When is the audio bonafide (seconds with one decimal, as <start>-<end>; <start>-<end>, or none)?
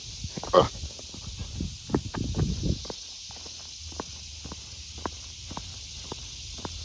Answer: 0.0-6.8